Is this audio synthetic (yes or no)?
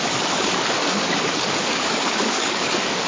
yes